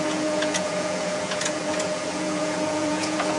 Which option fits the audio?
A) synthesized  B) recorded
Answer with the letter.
A